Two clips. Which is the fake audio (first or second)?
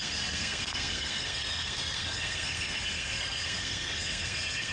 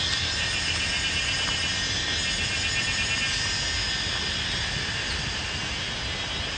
first